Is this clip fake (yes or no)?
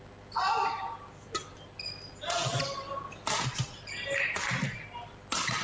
no